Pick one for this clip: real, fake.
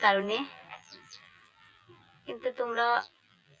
fake